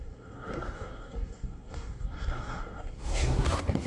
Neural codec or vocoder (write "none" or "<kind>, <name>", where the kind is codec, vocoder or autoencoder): codec, SNAC